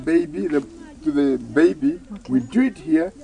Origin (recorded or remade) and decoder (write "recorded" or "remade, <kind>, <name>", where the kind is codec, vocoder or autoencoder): recorded